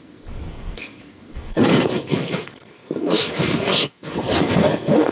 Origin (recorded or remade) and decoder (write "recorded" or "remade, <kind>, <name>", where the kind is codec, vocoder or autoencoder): remade, codec, SNAC